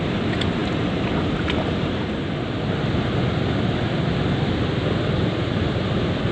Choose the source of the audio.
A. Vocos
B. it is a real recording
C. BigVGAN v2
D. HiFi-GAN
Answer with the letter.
B